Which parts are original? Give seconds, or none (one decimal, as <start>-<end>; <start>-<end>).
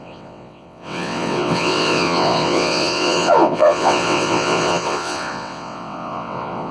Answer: none